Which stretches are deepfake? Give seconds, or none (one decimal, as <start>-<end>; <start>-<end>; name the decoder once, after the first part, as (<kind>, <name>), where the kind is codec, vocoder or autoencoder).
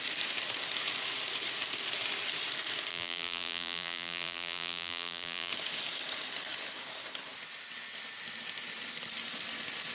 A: 2.9-5.5 (vocoder, BigVGAN v2)